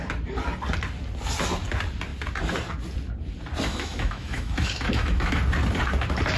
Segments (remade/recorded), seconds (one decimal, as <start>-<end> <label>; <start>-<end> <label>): 0.0-3.7 recorded; 3.7-5.4 remade; 5.4-6.4 recorded